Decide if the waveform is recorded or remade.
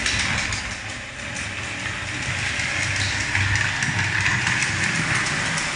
recorded